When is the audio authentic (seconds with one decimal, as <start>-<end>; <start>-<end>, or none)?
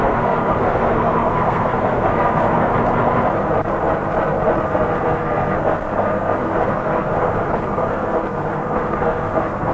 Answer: 2.7-4.6